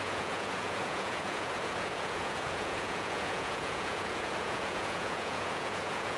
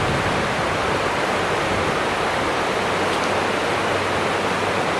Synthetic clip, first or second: first